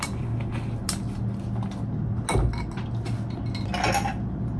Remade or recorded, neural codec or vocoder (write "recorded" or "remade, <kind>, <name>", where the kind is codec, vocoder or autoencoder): recorded